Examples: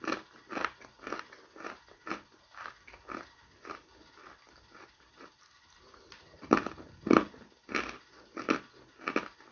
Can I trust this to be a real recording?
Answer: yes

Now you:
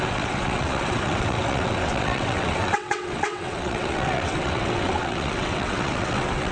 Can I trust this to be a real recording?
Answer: no